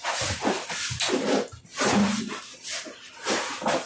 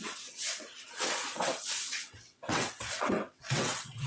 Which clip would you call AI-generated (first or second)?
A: second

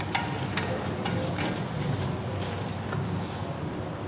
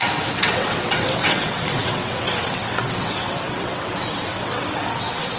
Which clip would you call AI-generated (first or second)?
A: second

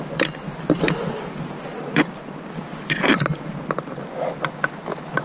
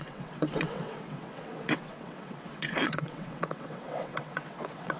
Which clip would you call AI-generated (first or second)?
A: second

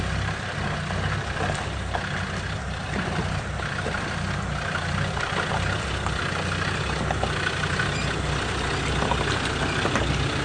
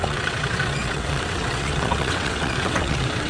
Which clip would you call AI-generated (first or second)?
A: second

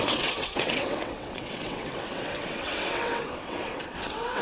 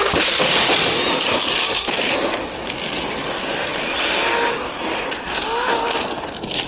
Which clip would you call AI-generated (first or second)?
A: first